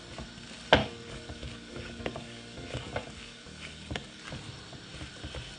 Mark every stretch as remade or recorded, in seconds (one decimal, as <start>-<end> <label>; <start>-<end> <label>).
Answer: 0.0-0.8 recorded; 0.8-4.2 remade; 4.2-5.6 recorded